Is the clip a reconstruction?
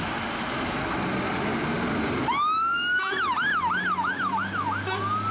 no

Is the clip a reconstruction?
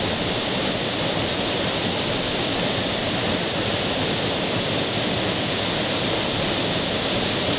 no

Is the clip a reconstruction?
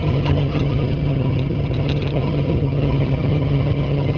yes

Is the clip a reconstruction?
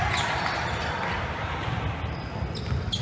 no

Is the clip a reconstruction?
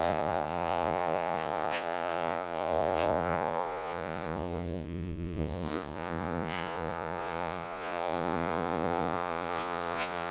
yes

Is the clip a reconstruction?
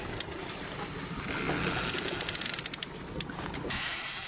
no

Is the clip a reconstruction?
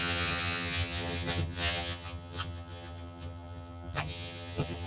yes